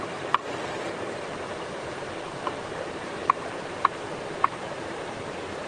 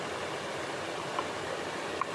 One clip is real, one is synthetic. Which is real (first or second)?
second